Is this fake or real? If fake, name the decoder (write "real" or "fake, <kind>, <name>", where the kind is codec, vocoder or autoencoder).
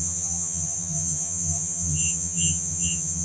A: fake, vocoder, HiFi-GAN